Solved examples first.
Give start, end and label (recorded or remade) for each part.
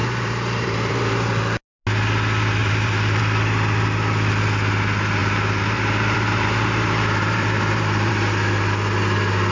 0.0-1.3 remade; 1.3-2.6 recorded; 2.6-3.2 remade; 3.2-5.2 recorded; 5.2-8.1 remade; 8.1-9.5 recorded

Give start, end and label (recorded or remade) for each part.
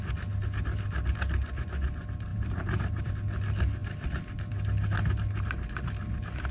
0.0-2.3 recorded; 2.3-3.1 remade; 3.1-6.5 recorded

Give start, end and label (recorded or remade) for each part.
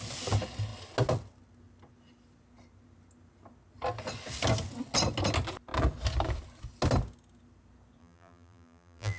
0.0-8.0 recorded; 8.0-9.2 remade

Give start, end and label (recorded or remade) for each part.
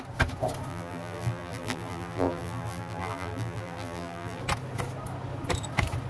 0.0-0.7 recorded; 0.7-4.4 remade; 4.4-6.1 recorded